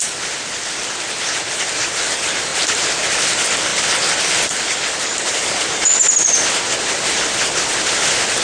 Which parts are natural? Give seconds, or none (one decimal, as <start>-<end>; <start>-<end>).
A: 0.0-8.4